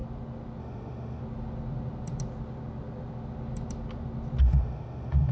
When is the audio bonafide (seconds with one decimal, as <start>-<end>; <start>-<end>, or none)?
0.0-0.6; 1.2-4.4